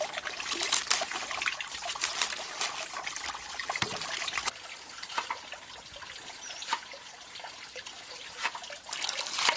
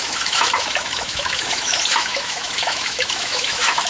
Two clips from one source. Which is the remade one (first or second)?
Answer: second